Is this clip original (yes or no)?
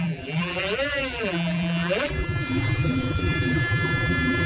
no